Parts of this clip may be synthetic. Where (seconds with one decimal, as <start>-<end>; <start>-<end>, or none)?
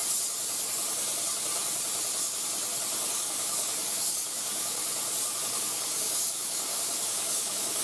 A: 3.1-4.8; 5.4-7.8